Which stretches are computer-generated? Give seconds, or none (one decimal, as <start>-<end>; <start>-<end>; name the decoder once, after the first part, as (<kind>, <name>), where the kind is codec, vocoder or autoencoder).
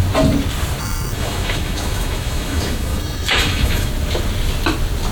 0.8-3.9 (autoencoder, DAC-VAE)